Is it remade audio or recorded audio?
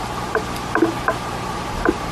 recorded